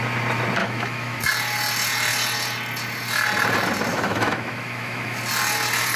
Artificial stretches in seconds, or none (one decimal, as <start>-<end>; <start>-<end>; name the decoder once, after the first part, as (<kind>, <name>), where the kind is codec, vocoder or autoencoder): 0.6-1.2 (autoencoder, DAC-VAE); 3.9-5.2